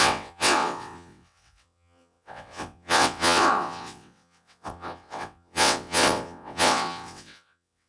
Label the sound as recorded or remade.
remade